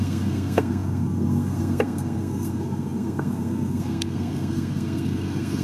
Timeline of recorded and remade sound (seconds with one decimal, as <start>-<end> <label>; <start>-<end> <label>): 0.0-5.6 remade